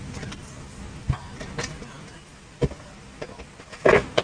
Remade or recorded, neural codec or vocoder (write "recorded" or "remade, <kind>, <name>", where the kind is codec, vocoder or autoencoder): recorded